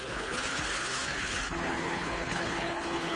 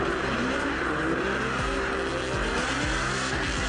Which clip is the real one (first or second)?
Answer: second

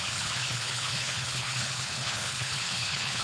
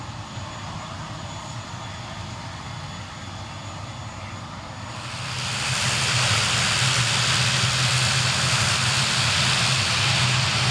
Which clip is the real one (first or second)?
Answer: second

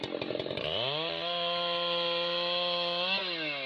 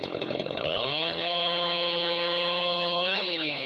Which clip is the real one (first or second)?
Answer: first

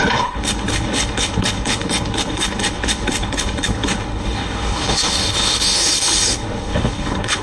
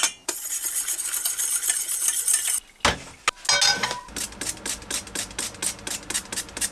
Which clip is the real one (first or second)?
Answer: second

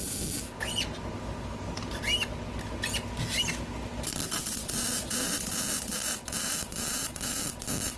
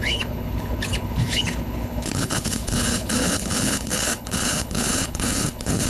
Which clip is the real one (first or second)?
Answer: first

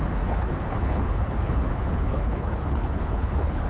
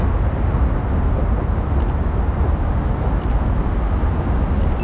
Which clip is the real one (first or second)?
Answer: second